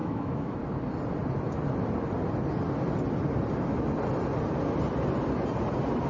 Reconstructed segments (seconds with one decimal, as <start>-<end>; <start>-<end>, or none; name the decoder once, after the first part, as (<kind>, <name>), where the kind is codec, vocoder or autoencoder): 0.0-0.6 (autoencoder, DAC-VAE)